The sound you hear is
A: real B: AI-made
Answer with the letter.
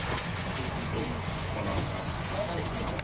B